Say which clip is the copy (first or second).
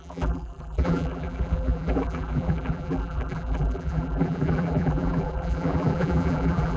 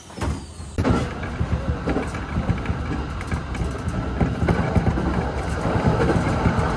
first